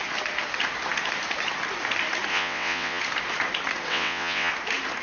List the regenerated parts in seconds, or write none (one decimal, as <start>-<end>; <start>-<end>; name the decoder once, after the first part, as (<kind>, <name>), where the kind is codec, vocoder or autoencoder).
2.3-3.0 (vocoder, WaveNeXt); 3.9-4.5

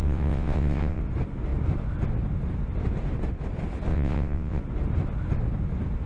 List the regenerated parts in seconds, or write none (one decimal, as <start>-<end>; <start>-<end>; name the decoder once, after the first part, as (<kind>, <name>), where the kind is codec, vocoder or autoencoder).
0.0-1.0 (vocoder, WaveNeXt); 3.9-4.6

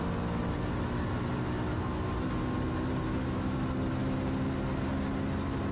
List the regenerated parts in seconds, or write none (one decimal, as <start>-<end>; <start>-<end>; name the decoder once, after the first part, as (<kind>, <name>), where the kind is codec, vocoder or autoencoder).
none